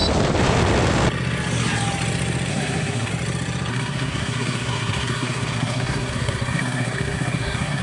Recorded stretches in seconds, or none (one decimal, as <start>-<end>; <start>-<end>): 0.0-2.5; 3.1-3.7